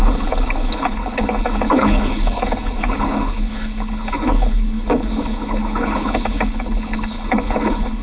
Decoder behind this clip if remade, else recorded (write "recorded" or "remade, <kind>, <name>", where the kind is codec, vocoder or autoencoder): remade, codec, HILCodec